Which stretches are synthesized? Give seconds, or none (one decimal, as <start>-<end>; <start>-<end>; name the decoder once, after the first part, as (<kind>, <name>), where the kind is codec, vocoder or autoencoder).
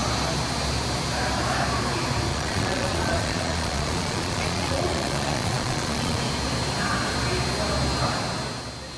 2.3-6.2 (vocoder, Vocos)